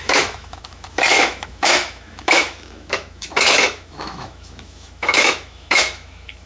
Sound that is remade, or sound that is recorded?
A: remade